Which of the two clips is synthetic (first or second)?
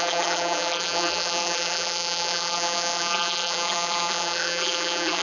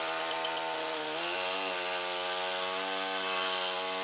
first